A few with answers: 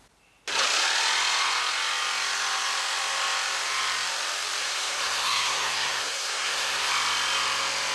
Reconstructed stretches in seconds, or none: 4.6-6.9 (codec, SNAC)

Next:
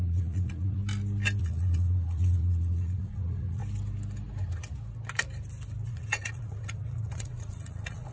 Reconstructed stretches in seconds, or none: 0.0-0.8 (vocoder, Vocos); 1.4-3.6; 5.9-8.1